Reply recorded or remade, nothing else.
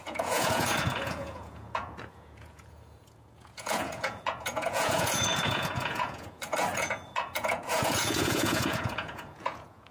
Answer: remade